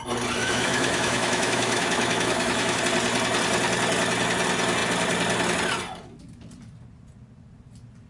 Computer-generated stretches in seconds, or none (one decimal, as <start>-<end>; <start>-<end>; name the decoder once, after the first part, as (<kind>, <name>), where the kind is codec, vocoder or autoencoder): 0.4-2.8 (autoencoder, DAC-VAE)